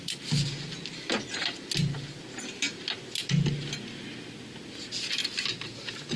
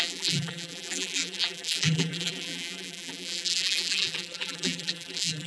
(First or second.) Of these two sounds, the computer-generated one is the second